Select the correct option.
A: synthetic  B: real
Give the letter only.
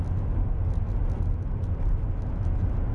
B